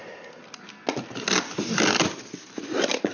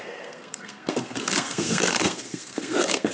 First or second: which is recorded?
first